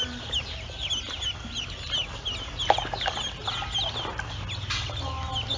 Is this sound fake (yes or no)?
no